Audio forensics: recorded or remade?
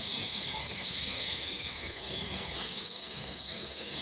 remade